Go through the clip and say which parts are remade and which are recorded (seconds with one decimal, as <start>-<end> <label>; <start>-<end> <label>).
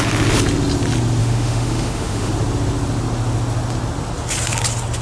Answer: 0.0-1.2 recorded; 1.2-2.3 remade; 2.3-5.0 recorded